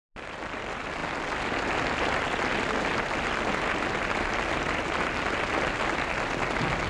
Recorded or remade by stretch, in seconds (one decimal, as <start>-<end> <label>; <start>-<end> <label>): 0.0-6.9 recorded